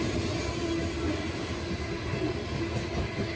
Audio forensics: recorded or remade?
recorded